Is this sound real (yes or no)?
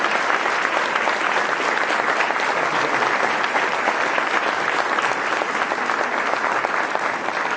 yes